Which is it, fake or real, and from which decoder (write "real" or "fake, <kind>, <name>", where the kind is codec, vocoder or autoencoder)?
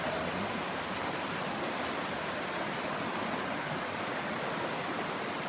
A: real